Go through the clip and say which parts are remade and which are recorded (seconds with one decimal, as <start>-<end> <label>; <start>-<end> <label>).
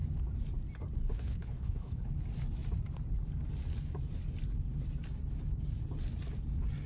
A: 0.0-1.1 recorded; 1.1-2.1 remade; 2.1-6.9 recorded